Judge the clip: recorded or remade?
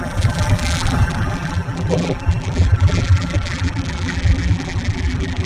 remade